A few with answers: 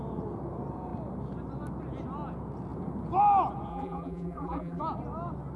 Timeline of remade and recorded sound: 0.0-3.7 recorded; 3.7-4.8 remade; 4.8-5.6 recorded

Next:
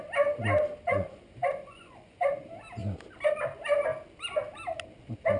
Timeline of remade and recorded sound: 0.0-0.9 recorded; 0.9-2.3 remade; 2.3-5.4 recorded